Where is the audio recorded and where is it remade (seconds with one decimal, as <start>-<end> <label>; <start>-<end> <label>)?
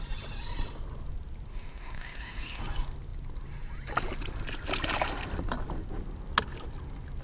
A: 0.0-1.5 recorded; 1.5-2.6 remade; 2.6-7.2 recorded